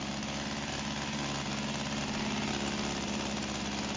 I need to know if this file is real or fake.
real